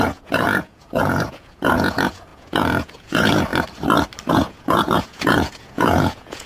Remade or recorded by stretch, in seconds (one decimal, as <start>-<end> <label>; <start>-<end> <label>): 0.0-3.5 remade; 3.5-4.3 recorded; 4.3-6.5 remade

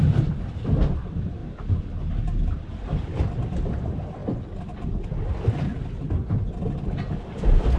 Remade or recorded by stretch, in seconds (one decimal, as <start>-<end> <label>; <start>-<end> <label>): 0.0-7.8 recorded

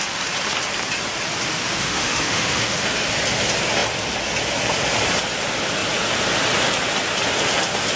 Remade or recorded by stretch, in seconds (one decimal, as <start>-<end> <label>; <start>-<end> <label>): 0.0-1.5 recorded; 1.5-2.9 remade; 2.9-8.0 recorded

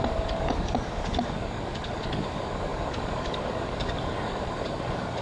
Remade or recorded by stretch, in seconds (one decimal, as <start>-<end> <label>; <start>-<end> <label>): 0.0-5.2 remade

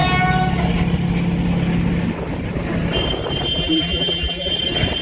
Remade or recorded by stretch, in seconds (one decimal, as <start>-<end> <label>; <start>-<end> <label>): 0.0-3.5 recorded; 3.5-4.5 remade; 4.5-5.0 recorded

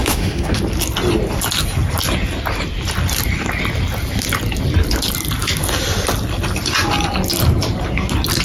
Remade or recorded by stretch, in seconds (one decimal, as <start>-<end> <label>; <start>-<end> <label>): 0.0-0.6 remade; 0.6-8.4 recorded